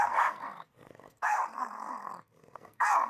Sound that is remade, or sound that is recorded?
remade